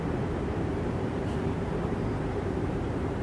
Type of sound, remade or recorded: remade